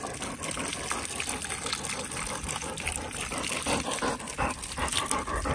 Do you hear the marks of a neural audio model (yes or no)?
no